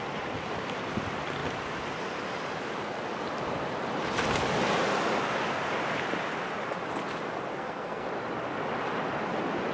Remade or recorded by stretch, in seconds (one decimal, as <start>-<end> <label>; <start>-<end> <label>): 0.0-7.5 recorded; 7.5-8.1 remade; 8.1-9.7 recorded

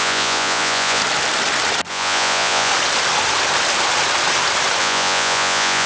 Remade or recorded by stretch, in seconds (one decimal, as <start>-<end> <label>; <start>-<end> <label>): 0.0-1.0 remade; 1.0-1.9 recorded; 1.9-2.7 remade; 2.7-4.8 recorded; 4.8-5.9 remade

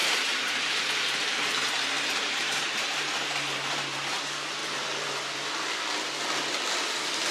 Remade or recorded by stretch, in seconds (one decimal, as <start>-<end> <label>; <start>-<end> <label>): 0.0-3.3 remade; 3.3-7.3 recorded

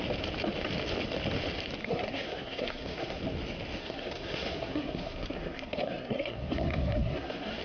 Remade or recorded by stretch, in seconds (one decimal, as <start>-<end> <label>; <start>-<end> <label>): 0.0-1.8 recorded; 1.8-3.2 remade; 3.2-3.8 recorded; 3.8-7.6 remade